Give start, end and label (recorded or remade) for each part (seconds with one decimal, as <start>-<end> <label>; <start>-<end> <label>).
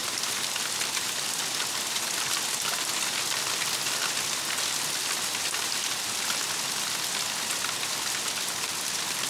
0.0-1.4 remade; 1.4-9.3 recorded